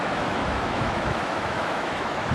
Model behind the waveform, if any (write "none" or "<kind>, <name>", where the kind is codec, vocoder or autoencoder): autoencoder, DAC-VAE